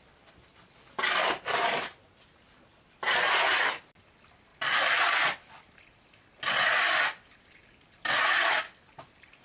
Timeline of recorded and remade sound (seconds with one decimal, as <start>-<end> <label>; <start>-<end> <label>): 0.0-9.4 recorded